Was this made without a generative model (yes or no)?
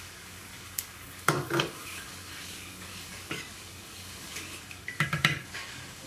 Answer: no